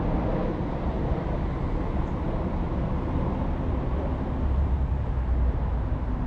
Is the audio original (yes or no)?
yes